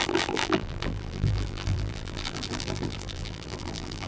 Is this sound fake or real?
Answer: fake